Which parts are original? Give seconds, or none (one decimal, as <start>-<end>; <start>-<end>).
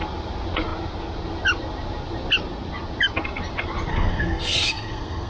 0.0-3.9